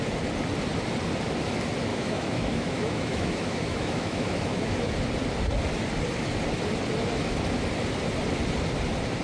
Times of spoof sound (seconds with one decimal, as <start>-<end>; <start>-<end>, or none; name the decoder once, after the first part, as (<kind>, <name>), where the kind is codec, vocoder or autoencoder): 1.9-4.9 (autoencoder, DAC-VAE)